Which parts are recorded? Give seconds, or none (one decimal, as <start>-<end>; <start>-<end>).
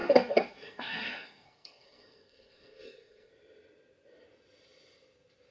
3.3-5.5